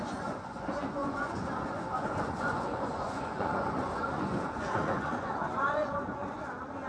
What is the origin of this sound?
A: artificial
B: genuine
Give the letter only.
A